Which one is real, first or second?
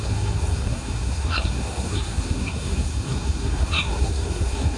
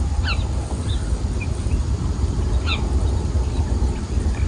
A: second